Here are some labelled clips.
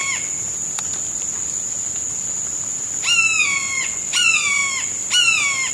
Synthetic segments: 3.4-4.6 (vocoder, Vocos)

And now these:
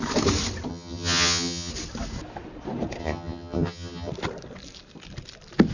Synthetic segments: 0.7-1.7 (vocoder, HiFi-GAN); 3.0-4.1

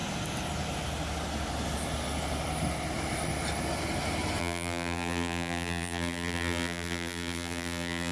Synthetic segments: 4.4-8.1 (vocoder, BigVGAN v2)

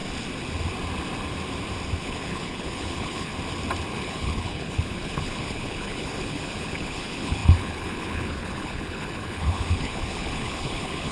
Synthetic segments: 2.0-3.3 (codec, HILCodec); 3.9-11.1

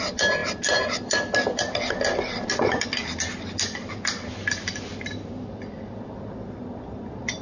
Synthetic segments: none